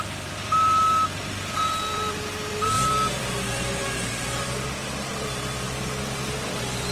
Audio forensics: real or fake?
fake